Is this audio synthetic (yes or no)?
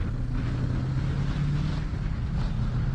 no